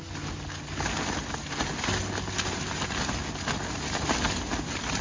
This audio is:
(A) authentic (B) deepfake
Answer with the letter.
A